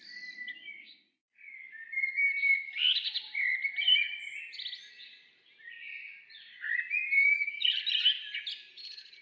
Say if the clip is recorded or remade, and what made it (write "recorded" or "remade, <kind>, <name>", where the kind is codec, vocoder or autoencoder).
recorded